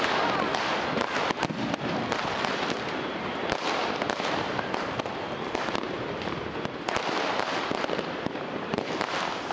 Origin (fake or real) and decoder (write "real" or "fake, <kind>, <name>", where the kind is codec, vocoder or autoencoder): real